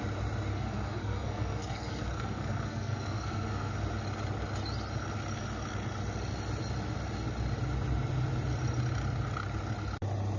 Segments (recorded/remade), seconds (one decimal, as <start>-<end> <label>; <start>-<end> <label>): 0.0-0.5 recorded; 0.5-3.7 remade; 3.7-10.4 recorded